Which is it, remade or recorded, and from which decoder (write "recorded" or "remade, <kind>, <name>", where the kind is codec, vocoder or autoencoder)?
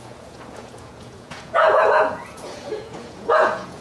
remade, vocoder, Vocos